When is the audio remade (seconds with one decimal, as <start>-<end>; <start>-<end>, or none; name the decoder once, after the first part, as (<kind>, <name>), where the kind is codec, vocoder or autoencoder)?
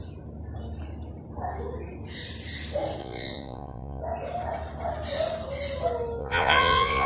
3.0-4.0 (vocoder, Vocos); 6.2-7.1